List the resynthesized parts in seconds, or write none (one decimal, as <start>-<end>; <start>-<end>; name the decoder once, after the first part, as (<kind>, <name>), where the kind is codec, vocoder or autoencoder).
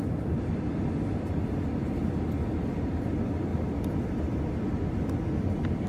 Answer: none